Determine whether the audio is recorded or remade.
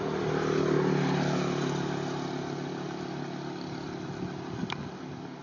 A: recorded